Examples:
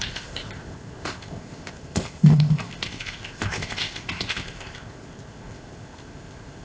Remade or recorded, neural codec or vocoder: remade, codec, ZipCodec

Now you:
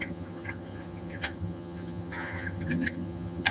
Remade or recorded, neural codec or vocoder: remade, vocoder, HiFi-GAN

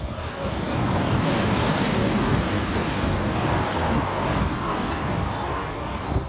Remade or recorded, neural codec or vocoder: remade, codec, DAC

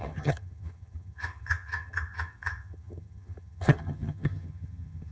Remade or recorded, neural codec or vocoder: remade, vocoder, HiFi-GAN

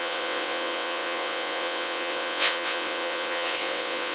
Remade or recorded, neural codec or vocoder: remade, vocoder, WaveNeXt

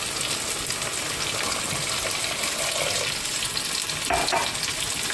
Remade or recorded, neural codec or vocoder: recorded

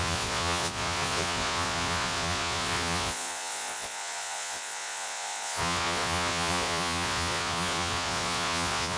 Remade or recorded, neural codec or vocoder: remade, vocoder, Vocos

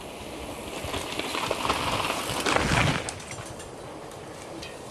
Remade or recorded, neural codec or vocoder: recorded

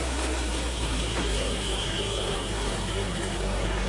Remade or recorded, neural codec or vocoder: remade, codec, SNAC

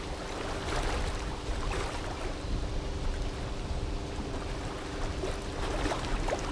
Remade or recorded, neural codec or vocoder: recorded